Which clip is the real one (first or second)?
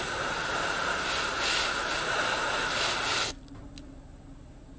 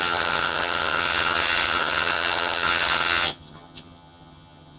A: first